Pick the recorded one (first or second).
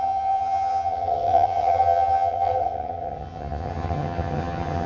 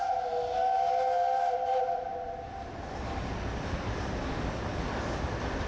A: second